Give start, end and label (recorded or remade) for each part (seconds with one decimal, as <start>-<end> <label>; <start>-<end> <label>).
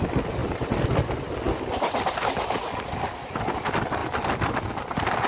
0.0-0.4 remade; 0.4-3.6 recorded; 3.6-4.0 remade; 4.0-4.6 recorded; 4.6-5.3 remade